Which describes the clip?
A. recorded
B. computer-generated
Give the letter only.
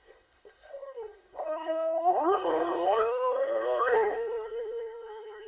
B